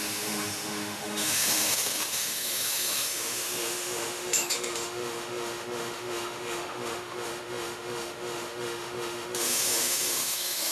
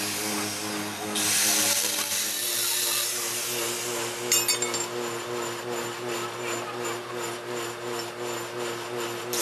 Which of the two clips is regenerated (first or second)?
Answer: first